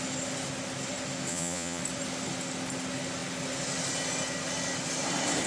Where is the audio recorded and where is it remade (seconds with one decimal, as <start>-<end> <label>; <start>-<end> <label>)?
0.0-1.3 recorded; 1.3-1.8 remade; 1.8-5.5 recorded